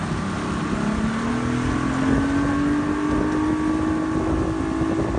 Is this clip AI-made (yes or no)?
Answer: no